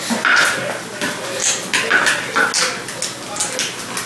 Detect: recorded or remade recorded